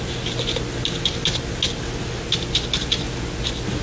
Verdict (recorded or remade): recorded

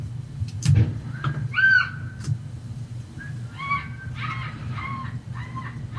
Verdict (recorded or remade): recorded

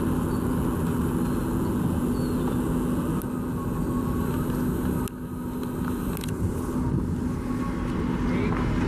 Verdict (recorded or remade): recorded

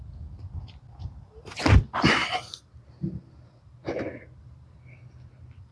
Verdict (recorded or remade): recorded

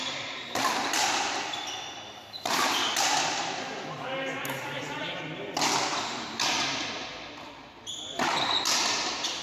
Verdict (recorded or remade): recorded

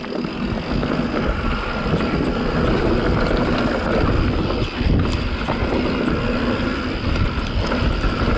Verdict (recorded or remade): recorded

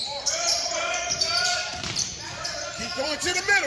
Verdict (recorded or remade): remade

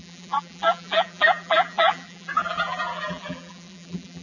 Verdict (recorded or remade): remade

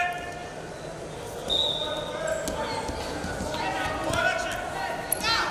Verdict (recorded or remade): recorded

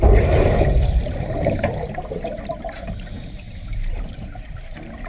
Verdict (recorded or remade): remade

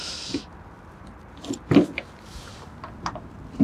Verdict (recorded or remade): recorded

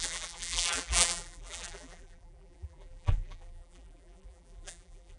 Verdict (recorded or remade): remade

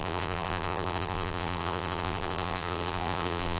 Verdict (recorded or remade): remade